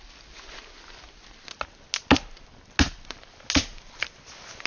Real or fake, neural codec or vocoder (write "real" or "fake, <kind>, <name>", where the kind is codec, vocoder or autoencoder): real